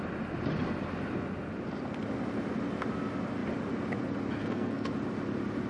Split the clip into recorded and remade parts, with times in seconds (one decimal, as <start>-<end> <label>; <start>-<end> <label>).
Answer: 0.0-4.4 recorded; 4.4-4.9 remade; 4.9-5.7 recorded